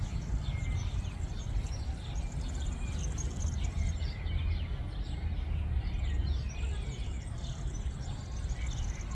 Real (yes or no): yes